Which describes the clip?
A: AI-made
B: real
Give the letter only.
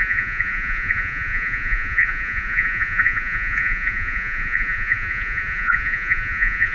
A